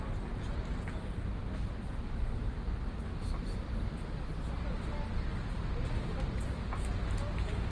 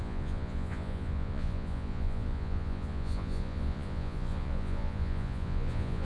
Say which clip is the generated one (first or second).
second